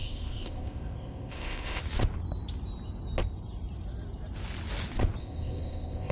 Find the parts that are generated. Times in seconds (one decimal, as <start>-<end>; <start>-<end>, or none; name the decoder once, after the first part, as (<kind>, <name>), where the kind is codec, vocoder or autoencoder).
0.0-1.8 (codec, ZipCodec); 5.2-6.1